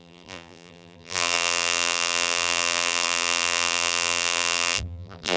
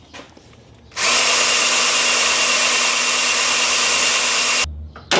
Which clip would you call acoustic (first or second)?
second